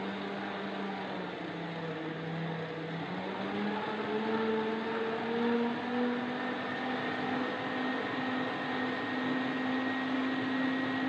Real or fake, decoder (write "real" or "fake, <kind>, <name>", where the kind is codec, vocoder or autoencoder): real